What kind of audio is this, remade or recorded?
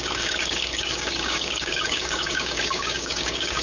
remade